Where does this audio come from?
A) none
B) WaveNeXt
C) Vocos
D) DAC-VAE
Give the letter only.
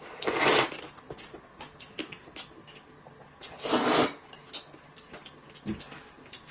A